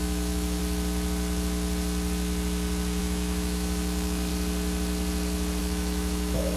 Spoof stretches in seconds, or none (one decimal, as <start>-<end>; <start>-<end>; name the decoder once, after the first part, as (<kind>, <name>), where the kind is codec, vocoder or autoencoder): 0.0-0.6 (autoencoder, DAC-VAE); 3.0-4.3; 5.6-6.6